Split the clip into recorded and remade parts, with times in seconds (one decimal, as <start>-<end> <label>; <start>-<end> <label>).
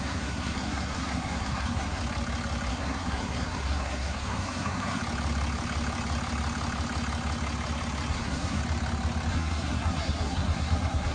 0.0-2.0 remade; 2.0-2.7 recorded; 2.7-5.0 remade; 5.0-8.1 recorded; 8.1-8.6 remade; 8.6-9.3 recorded; 9.3-11.1 remade